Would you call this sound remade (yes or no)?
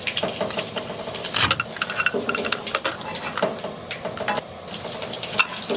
no